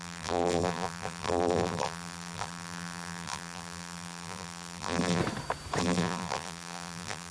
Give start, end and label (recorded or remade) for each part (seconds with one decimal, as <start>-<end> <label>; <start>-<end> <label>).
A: 0.0-5.2 remade; 5.2-5.8 recorded; 5.8-7.3 remade